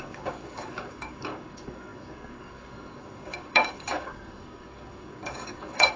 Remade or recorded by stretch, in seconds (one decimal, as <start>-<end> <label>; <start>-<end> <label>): 0.0-6.0 remade